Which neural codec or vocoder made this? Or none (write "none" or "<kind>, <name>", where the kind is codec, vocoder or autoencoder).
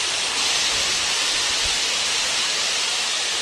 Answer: none